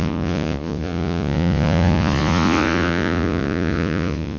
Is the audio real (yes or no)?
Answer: no